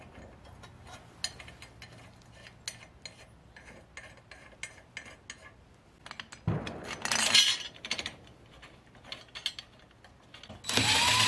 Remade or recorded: recorded